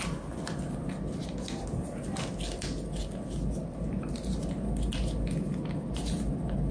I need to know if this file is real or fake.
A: real